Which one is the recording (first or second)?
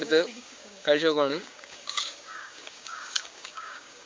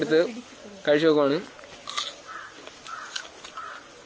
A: second